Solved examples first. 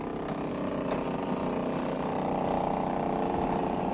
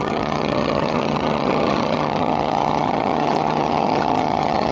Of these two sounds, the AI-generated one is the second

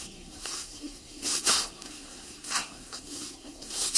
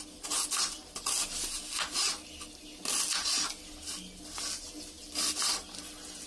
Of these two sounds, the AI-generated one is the first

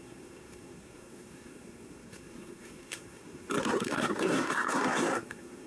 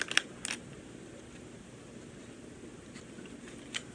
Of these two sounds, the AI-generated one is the first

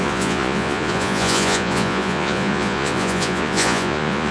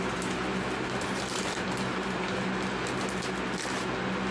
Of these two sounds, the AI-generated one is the first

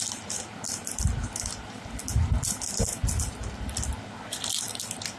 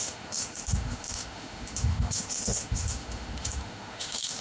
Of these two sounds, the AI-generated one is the second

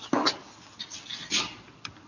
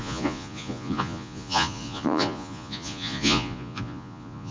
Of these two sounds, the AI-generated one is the second